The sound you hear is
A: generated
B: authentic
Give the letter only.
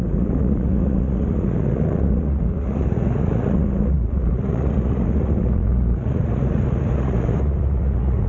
A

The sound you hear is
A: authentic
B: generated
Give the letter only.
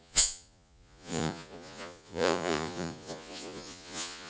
B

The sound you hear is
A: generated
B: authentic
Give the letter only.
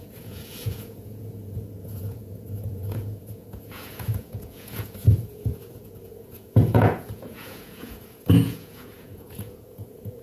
A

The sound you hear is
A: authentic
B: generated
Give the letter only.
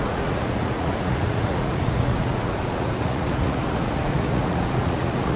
B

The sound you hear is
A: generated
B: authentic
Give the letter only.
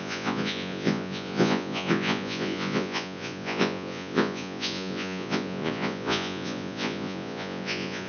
A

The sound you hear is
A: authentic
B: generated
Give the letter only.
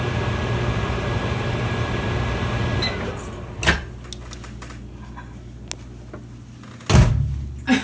A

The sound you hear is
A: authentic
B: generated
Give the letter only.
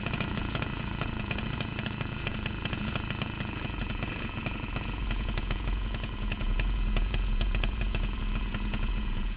B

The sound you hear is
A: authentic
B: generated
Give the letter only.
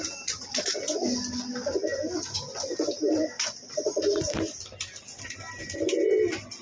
A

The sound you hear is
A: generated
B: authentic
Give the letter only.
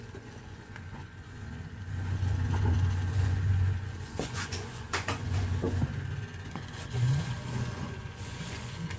A